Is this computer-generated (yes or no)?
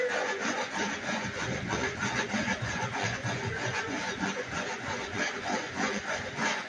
yes